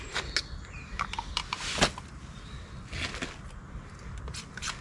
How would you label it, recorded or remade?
recorded